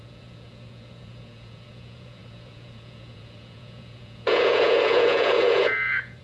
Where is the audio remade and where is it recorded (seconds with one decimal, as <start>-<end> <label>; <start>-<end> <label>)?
0.0-6.2 remade